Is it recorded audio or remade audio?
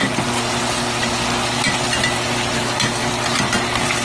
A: recorded